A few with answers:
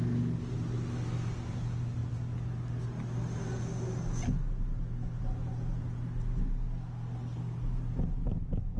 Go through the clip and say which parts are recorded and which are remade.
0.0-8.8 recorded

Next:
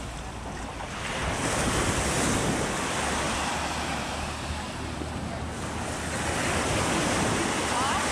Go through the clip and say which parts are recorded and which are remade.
0.0-8.1 recorded

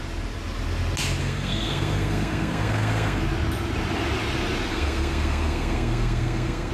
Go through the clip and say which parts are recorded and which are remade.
0.0-1.2 recorded; 1.2-3.2 remade; 3.2-4.7 recorded; 4.7-6.7 remade

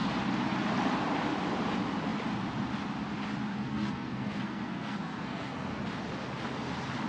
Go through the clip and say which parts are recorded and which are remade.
0.0-3.5 recorded; 3.5-5.8 remade; 5.8-7.1 recorded